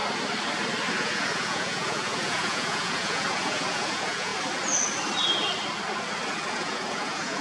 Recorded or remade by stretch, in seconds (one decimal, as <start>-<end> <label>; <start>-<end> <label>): 0.0-0.9 recorded; 0.9-4.3 remade; 4.3-6.5 recorded; 6.5-7.4 remade